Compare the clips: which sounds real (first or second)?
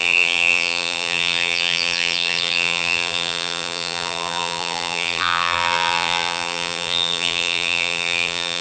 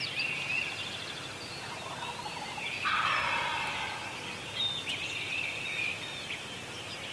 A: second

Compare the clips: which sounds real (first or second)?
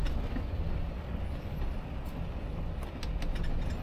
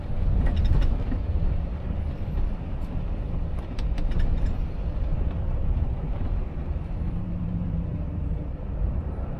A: first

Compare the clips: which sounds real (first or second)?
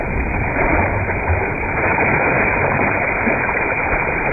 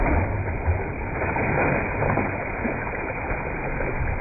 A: second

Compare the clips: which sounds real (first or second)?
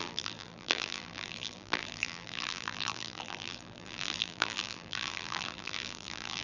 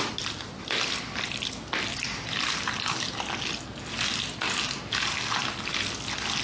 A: second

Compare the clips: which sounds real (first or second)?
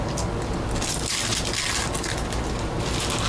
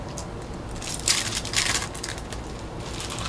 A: first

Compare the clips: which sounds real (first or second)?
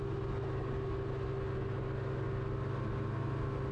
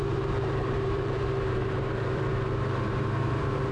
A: first